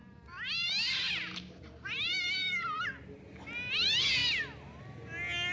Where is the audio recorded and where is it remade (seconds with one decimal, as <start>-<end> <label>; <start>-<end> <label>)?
0.0-5.5 recorded